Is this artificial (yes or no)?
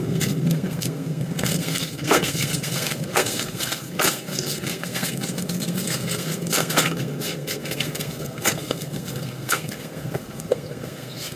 yes